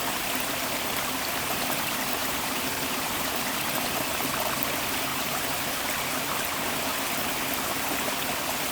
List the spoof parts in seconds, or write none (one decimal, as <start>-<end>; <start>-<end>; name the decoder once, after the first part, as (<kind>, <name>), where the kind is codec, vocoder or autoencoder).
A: 2.2-3.6 (vocoder, BigVGAN v2); 5.1-5.7